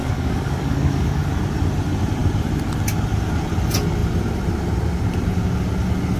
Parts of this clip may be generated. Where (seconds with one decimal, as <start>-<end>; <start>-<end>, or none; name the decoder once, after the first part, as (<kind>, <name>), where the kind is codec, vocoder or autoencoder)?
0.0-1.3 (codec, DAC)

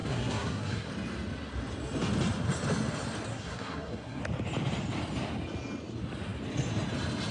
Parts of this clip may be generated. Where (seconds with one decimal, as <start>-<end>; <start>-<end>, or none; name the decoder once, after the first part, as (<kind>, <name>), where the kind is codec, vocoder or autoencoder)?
0.0-0.9 (codec, SNAC); 3.3-4.2

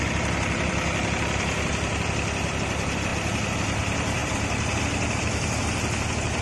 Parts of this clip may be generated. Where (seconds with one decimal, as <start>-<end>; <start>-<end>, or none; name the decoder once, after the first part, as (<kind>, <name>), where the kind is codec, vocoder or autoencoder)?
0.0-3.1 (vocoder, BigVGAN v2); 3.8-6.4

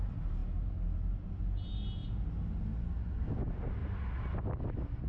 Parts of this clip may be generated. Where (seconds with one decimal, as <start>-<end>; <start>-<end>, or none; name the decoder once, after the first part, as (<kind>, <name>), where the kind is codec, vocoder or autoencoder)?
none

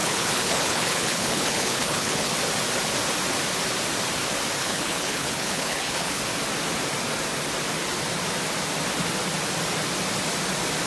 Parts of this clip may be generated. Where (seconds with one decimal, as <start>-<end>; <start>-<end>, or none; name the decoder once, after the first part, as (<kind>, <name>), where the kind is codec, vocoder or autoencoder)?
0.0-2.3 (codec, HILCodec); 4.6-6.2